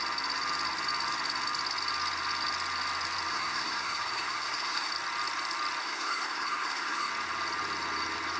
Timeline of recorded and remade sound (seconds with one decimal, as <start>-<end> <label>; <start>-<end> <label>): 0.0-3.3 recorded; 3.3-4.9 remade; 4.9-5.8 recorded; 5.8-7.1 remade; 7.1-8.4 recorded

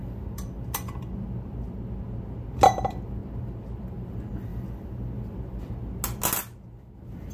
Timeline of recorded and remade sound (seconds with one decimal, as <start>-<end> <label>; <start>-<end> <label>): 0.0-1.1 remade; 1.1-4.5 recorded; 4.5-5.7 remade; 5.7-7.3 recorded

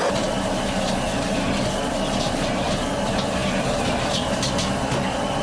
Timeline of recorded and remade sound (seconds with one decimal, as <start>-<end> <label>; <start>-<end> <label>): 0.0-5.4 recorded

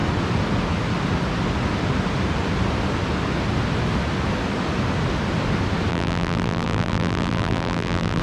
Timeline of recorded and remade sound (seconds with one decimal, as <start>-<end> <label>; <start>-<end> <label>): 0.0-5.9 recorded; 5.9-8.2 remade